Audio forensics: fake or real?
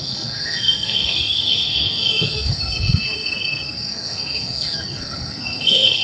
fake